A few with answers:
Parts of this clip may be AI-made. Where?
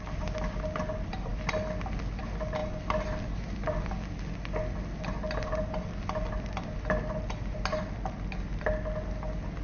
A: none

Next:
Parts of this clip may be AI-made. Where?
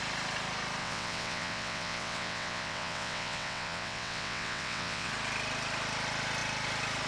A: 0.8-5.1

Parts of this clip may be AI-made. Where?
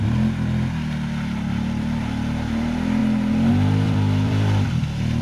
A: 0.0-3.0; 3.5-5.2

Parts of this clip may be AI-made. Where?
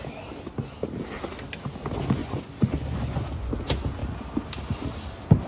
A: 2.2-3.5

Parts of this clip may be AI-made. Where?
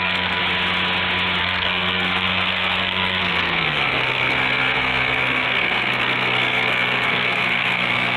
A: 0.0-0.4; 1.4-8.2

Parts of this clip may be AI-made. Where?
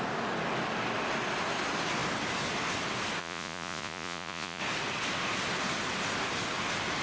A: 3.2-4.6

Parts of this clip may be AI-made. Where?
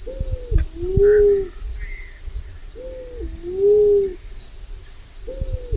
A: none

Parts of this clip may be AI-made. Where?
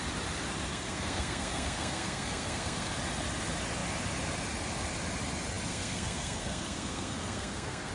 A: 0.7-2.9; 5.7-7.9